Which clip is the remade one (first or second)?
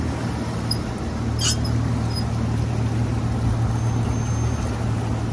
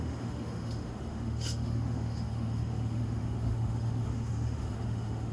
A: second